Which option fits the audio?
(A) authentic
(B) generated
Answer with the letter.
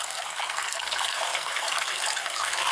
B